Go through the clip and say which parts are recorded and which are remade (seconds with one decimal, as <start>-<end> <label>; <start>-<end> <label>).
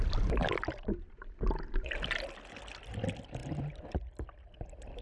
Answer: 0.0-3.0 remade; 3.0-3.4 recorded; 3.4-5.0 remade